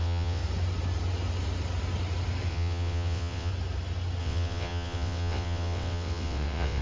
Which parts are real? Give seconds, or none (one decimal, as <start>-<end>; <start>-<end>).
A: 0.4-2.5; 3.5-4.2